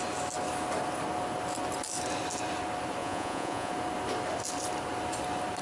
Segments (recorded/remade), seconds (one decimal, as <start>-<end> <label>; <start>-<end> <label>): 0.0-3.0 recorded; 3.0-3.7 remade; 3.7-5.6 recorded